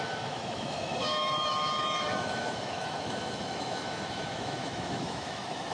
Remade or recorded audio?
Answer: remade